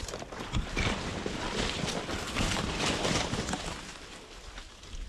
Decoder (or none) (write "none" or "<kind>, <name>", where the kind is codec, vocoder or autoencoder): none